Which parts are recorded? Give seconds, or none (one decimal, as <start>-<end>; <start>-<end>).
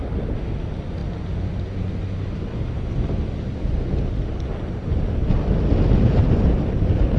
0.0-7.2